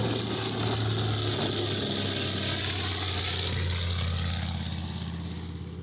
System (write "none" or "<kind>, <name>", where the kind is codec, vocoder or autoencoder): none